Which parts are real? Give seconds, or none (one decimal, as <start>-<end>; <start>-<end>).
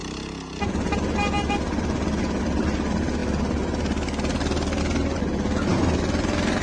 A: 0.0-6.6